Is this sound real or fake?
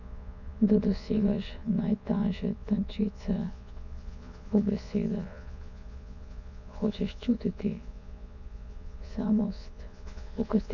fake